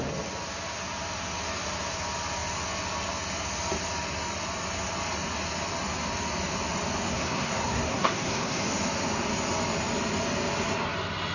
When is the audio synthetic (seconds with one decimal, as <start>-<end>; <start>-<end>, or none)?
7.1-8.6